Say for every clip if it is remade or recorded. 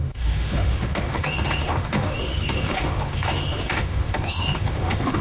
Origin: remade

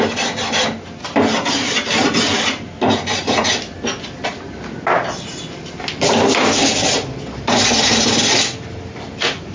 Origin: recorded